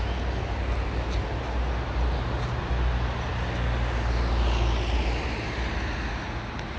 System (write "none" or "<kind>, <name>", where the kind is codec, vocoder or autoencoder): none